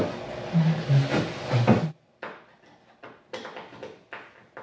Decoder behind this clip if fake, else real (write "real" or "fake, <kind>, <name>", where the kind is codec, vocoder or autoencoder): real